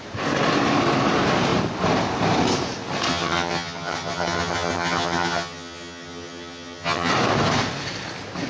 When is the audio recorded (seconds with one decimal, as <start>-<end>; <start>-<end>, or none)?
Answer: 0.0-3.1; 7.1-8.5